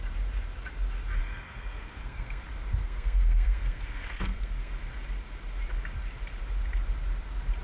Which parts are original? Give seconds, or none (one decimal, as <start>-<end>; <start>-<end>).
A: 0.0-1.2; 2.4-2.8; 4.7-7.6